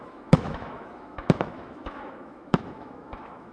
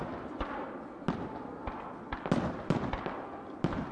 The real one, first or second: second